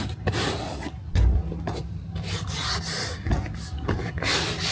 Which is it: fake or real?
real